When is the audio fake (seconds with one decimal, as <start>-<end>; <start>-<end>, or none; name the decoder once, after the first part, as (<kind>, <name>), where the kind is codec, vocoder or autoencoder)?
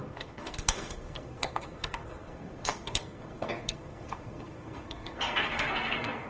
0.0-6.3 (codec, SNAC)